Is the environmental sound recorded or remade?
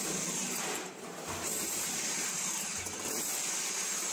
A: remade